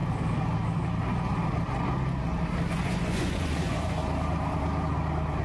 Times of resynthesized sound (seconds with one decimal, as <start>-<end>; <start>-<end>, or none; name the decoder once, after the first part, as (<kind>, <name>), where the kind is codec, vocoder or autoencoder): 2.7-4.0 (vocoder, Vocos)